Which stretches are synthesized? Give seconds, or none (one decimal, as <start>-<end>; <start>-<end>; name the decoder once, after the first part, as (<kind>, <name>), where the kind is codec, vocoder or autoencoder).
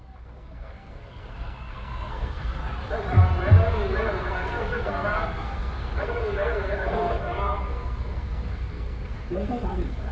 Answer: 0.0-2.6 (codec, SNAC); 4.0-10.1